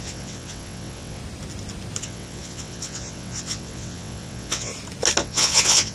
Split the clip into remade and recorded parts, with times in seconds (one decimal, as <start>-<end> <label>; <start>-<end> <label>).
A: 0.0-1.2 remade; 1.2-2.0 recorded; 2.0-4.7 remade; 4.7-5.2 recorded; 5.2-5.9 remade